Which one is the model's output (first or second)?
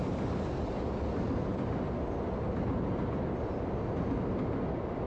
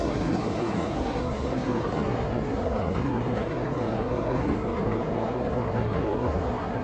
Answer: second